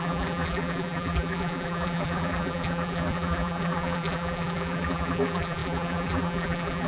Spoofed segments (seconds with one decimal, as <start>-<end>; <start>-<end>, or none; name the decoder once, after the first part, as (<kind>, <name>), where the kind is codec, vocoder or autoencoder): 0.0-6.9 (vocoder, BigVGAN v2)